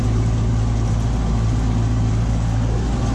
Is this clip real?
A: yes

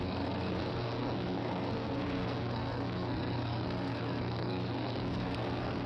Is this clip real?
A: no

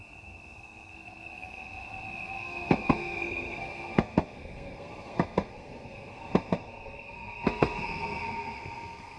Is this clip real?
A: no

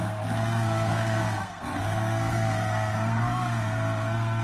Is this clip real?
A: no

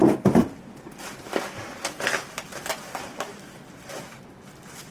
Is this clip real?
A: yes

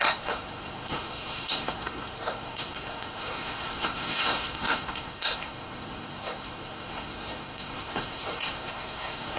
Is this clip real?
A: no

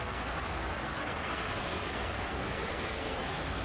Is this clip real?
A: no